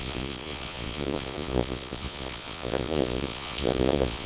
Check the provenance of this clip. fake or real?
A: fake